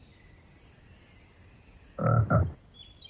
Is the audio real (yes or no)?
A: yes